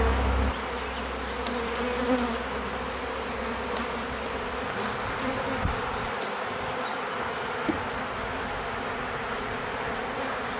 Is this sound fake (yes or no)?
no